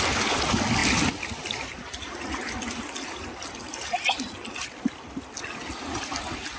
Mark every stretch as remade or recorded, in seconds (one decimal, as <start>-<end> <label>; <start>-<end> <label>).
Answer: 0.0-6.6 recorded